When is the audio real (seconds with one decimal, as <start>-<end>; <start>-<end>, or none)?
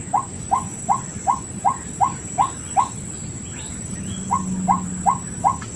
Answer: 0.8-5.8